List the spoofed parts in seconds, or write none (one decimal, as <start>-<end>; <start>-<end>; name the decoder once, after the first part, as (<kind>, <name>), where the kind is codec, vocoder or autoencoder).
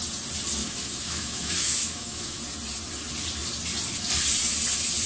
0.6-2.4 (autoencoder, DAC-VAE)